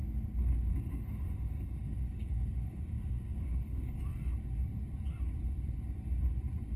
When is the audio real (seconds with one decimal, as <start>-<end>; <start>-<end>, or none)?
0.0-0.7; 4.0-6.8